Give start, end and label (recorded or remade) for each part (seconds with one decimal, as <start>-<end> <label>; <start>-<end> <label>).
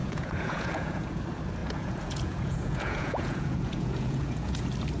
0.0-1.2 remade; 1.2-1.6 recorded; 1.6-4.6 remade; 4.6-5.0 recorded